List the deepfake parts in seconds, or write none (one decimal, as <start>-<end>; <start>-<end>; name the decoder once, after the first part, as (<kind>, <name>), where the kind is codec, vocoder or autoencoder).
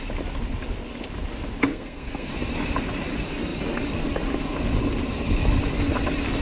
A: 1.7-2.3 (codec, SNAC)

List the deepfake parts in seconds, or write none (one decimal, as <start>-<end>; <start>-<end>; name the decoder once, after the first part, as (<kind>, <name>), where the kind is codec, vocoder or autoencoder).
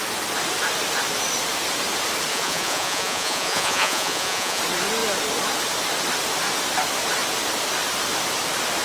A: 2.3-4.6 (vocoder, Vocos)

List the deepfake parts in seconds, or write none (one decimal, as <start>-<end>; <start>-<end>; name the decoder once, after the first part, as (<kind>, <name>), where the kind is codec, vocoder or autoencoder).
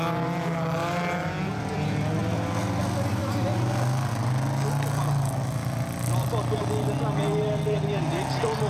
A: none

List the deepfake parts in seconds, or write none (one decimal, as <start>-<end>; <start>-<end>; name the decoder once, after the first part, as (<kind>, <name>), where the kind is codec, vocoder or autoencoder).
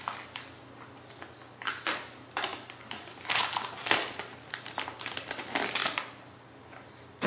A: none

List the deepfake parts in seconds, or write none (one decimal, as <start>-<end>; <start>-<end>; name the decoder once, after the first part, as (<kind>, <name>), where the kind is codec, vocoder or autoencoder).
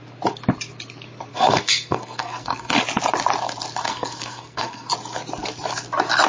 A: 1.3-2.8 (codec, SNAC); 3.8-4.9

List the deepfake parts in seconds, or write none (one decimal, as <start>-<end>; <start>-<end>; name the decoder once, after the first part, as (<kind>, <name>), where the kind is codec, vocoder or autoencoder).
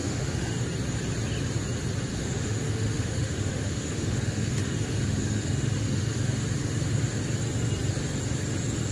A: 0.0-0.6 (autoencoder, DAC-VAE); 2.1-7.0